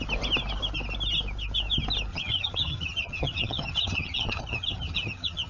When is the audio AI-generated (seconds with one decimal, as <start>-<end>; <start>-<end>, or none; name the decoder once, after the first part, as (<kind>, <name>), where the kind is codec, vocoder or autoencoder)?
2.1-5.5 (vocoder, HiFi-GAN)